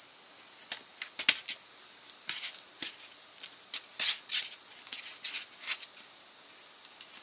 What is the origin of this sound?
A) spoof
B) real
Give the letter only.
B